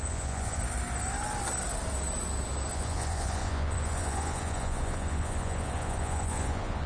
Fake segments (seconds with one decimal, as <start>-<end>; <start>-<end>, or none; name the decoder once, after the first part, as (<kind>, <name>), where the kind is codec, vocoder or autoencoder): 0.0-0.6 (vocoder, Vocos); 2.7-6.9

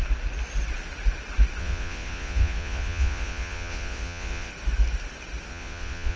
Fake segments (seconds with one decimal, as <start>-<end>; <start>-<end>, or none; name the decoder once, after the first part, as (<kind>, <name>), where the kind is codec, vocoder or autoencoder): 1.6-4.5 (vocoder, Vocos); 5.5-6.2